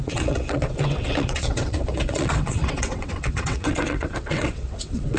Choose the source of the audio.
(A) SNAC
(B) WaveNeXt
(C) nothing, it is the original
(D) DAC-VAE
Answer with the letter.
B